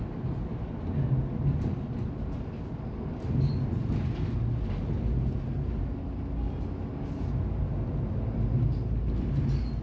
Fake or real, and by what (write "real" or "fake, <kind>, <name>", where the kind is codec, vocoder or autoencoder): real